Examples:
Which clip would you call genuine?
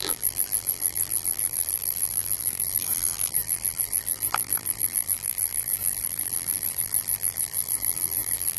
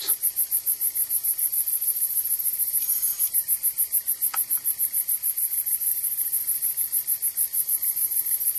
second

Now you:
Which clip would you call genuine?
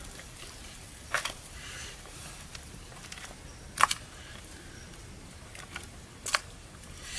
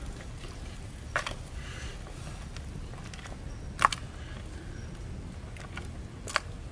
second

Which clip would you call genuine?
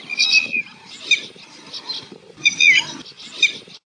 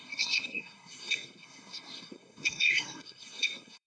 first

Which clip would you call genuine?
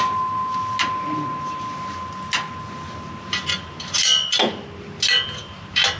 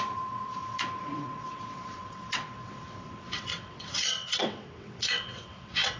first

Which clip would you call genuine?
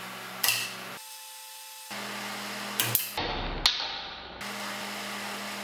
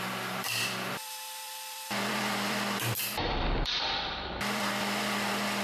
first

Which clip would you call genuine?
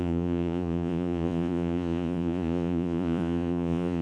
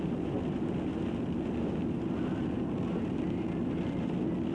second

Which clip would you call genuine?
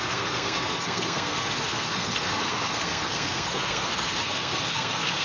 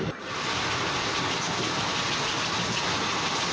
second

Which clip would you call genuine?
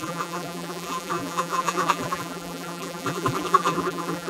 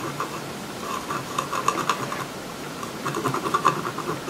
second